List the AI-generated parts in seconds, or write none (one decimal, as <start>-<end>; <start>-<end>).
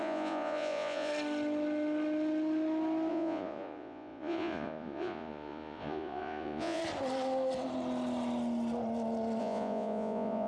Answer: 0.0-1.1; 3.1-6.8; 9.4-10.5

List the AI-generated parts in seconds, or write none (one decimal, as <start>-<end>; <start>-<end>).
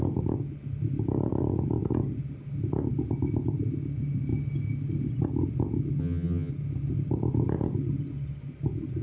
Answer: 6.0-6.5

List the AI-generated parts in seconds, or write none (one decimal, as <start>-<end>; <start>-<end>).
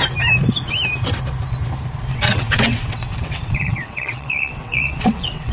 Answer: 2.1-5.5